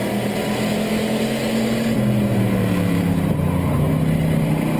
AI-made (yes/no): no